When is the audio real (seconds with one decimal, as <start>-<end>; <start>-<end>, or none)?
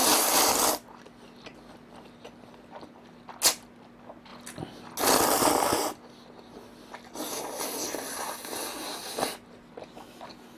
0.0-10.6